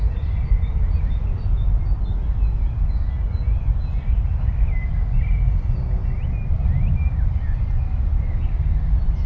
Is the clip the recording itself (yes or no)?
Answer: yes